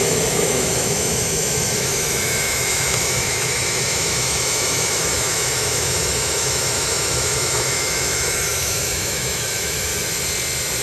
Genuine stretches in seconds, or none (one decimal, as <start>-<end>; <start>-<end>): 9.9-10.8